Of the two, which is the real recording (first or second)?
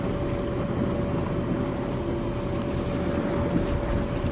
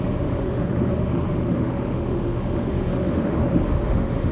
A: first